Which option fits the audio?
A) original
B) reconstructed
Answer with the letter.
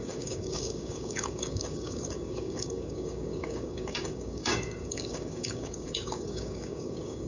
B